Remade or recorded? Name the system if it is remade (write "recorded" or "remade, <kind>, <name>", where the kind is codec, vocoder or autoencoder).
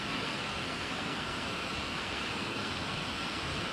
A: remade, codec, SNAC